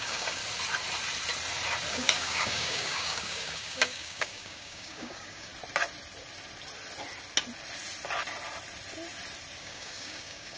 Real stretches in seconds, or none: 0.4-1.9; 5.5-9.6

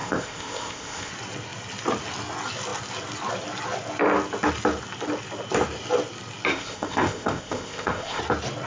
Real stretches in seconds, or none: 1.1-6.5; 8.2-8.7

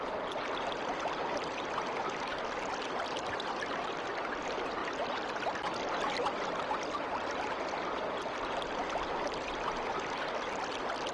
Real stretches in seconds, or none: 0.0-11.1